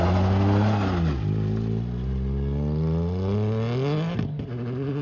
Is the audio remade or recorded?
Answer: recorded